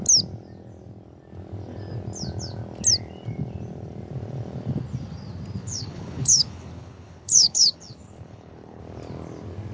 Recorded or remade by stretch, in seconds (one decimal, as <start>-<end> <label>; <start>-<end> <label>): 0.0-5.6 recorded; 5.6-8.8 remade; 8.8-9.7 recorded